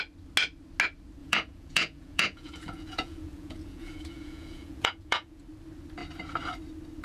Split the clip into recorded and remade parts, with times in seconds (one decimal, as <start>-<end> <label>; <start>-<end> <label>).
0.0-1.2 recorded; 1.2-5.4 remade; 5.4-7.0 recorded